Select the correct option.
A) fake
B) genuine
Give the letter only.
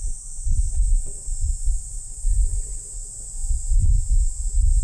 B